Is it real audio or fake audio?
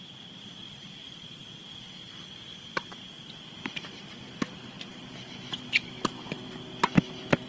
real